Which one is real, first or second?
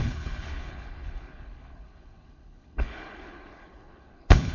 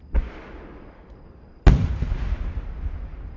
second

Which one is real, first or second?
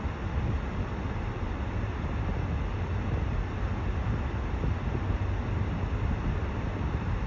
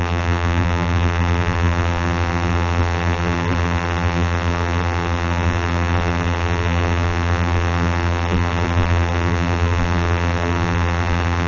first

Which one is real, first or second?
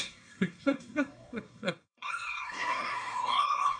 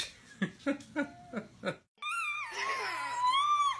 second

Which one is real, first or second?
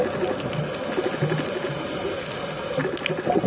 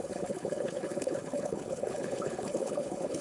first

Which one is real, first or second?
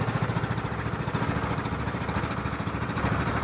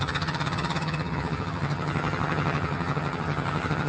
first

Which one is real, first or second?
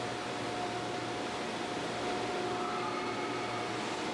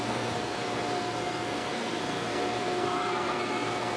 first